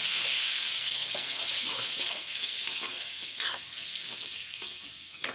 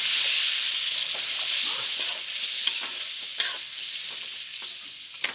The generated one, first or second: first